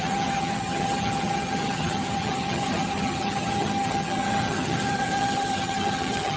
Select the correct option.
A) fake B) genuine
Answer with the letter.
A